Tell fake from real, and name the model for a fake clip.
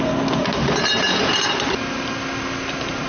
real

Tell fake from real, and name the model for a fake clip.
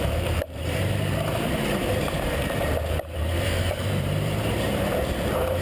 fake, vocoder, BigVGAN v2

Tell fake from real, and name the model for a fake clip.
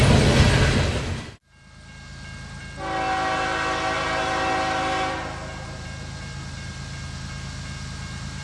real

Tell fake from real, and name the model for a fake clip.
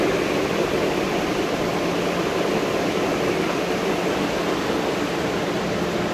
real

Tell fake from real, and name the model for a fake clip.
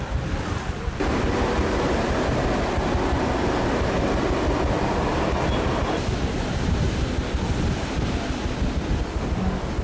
real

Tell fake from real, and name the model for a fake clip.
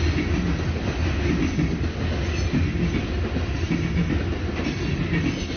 real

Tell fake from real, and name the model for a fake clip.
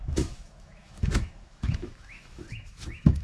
fake, autoencoder, DAC-VAE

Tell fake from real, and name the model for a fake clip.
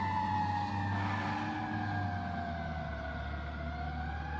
real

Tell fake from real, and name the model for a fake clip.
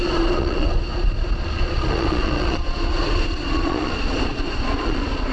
fake, vocoder, Vocos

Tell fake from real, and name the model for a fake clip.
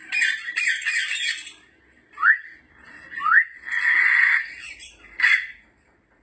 fake, vocoder, BigVGAN v2